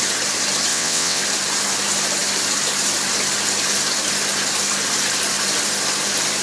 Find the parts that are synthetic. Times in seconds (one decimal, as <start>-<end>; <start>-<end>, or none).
0.7-1.2